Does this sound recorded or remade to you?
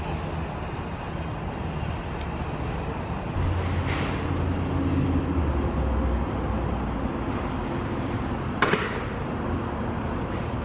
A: recorded